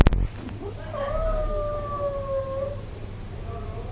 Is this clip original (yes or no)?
yes